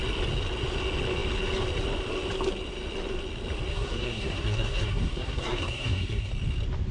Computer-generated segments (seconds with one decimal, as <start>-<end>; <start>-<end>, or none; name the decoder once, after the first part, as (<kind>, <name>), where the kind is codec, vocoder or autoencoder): 3.7-6.3 (codec, SNAC)